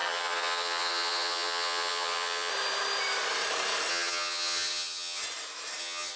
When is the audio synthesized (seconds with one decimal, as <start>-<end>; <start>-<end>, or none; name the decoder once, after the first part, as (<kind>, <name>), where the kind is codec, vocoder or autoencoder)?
0.0-2.5 (vocoder, HiFi-GAN); 3.9-5.2; 5.8-6.2